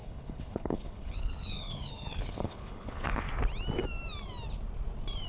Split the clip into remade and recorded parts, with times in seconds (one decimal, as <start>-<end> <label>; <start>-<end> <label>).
0.0-3.2 remade; 3.2-5.3 recorded